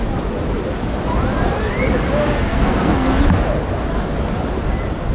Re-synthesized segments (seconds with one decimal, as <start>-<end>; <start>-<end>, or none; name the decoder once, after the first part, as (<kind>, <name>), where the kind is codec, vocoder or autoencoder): 2.2-3.2 (codec, SNAC)